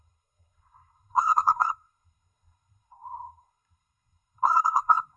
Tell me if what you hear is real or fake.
fake